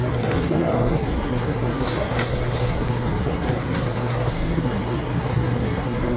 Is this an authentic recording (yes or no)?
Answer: no